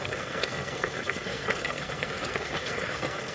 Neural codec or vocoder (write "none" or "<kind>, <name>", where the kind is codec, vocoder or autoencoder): codec, SNAC